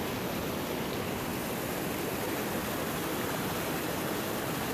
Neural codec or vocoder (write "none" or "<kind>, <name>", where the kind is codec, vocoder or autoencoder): none